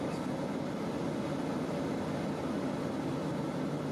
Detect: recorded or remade recorded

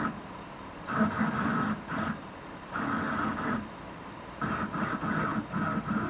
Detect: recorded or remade recorded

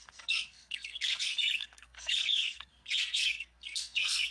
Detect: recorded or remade remade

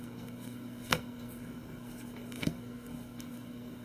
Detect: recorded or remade remade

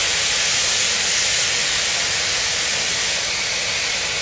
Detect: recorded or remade recorded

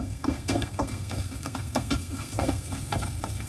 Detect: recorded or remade remade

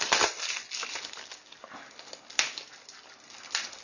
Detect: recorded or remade recorded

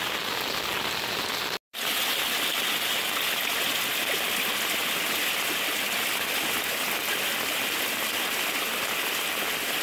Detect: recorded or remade recorded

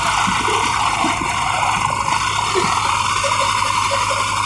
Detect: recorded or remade recorded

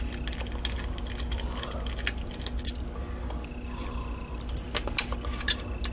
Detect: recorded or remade recorded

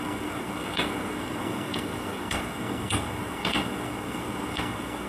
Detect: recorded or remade remade